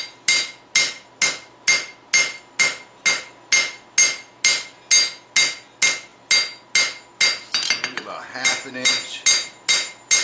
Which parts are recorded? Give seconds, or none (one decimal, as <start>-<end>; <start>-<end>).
0.0-10.2

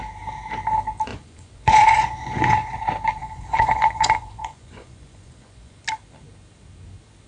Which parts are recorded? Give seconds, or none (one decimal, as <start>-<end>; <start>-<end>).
0.0-1.1; 2.8-3.2; 5.8-7.3

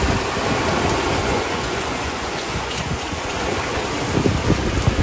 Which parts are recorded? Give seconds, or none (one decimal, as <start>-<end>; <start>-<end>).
0.0-1.2; 3.8-5.0

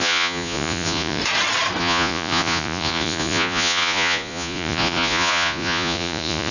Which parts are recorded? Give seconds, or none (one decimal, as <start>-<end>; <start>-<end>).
1.2-1.8

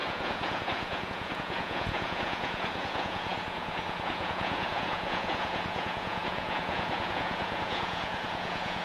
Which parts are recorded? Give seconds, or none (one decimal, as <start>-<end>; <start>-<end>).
none

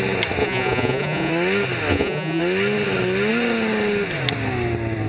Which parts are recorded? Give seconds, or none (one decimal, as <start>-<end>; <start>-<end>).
0.0-0.4; 1.3-1.9; 2.4-5.1